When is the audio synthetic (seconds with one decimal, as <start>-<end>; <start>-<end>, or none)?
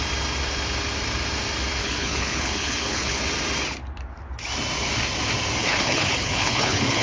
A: 1.8-3.2; 5.6-7.0